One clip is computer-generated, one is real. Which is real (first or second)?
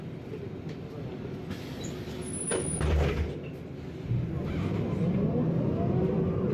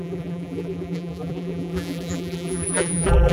first